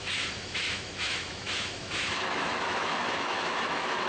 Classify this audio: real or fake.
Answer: fake